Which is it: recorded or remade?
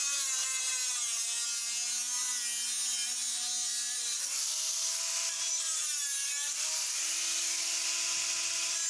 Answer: recorded